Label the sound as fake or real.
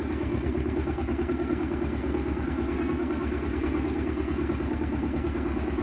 fake